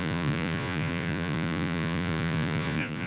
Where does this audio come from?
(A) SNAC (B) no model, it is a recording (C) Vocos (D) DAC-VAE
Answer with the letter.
C